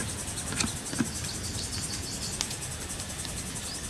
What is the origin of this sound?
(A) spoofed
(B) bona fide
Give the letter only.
B